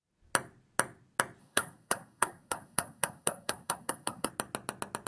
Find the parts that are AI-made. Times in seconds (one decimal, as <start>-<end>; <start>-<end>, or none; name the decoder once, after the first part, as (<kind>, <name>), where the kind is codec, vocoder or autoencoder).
1.4-4.3 (codec, SNAC)